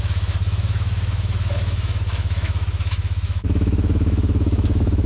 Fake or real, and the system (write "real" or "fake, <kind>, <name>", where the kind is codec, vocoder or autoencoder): fake, autoencoder, DAC-VAE